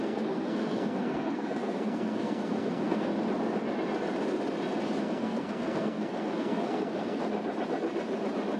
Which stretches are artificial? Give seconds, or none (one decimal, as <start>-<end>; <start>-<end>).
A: 0.0-3.1; 5.0-7.2